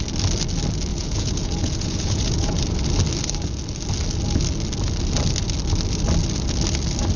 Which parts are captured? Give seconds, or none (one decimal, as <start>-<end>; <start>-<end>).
0.0-0.9; 2.6-7.2